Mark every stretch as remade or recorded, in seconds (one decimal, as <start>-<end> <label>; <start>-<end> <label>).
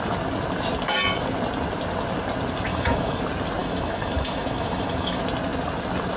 0.0-2.7 recorded; 2.7-3.2 remade; 3.2-3.6 recorded; 3.6-5.2 remade; 5.2-6.2 recorded